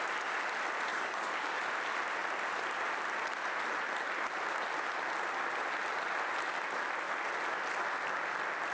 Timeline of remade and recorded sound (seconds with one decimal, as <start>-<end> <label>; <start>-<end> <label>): 0.0-0.9 recorded; 0.9-1.7 remade; 1.7-8.7 recorded